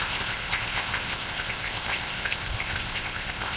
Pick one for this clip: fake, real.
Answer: fake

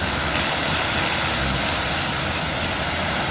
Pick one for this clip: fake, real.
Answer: real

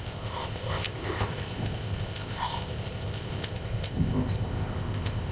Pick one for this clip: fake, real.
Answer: fake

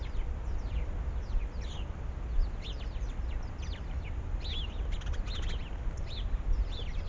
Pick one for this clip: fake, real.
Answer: real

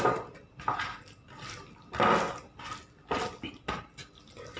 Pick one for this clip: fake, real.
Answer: real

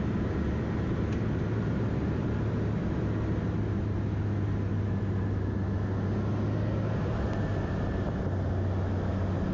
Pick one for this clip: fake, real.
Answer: real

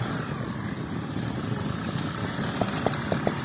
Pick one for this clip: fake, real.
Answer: real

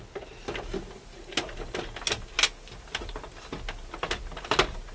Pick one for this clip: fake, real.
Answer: real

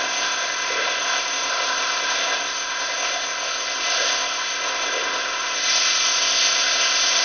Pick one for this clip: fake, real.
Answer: fake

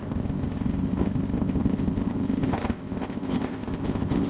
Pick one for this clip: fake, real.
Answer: fake